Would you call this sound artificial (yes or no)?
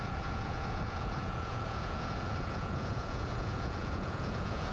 yes